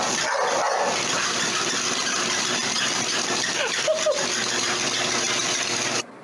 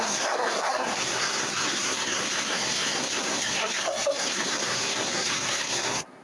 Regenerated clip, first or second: second